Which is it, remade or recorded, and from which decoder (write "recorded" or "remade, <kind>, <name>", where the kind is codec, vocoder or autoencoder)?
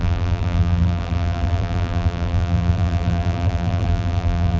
remade, vocoder, BigVGAN v2